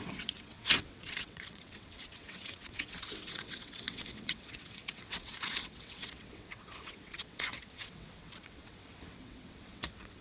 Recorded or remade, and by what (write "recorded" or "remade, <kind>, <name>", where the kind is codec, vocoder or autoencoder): remade, vocoder, WaveNeXt